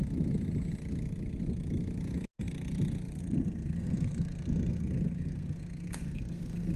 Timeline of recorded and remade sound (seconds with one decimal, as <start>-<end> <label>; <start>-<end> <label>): 0.0-3.2 recorded; 3.2-6.8 remade

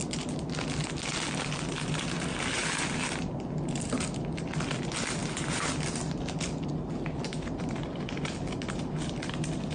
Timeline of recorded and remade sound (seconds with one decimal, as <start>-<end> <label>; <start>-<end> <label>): 0.0-2.6 recorded; 2.6-4.5 remade; 4.5-9.7 recorded

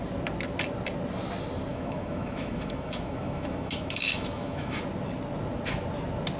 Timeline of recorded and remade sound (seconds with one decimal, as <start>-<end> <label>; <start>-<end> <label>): 0.0-1.7 recorded; 1.7-4.8 remade; 4.8-6.4 recorded

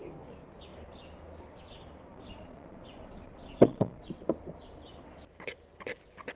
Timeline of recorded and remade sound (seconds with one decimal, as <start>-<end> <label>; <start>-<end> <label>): 0.0-2.1 recorded; 2.1-4.1 remade; 4.1-6.4 recorded

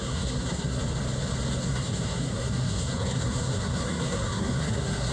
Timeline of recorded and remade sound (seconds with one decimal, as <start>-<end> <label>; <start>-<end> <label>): 0.0-0.8 remade; 0.8-1.7 recorded; 1.7-5.1 remade